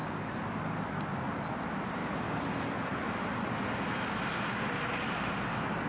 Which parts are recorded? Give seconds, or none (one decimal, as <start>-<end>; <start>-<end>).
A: 0.0-5.9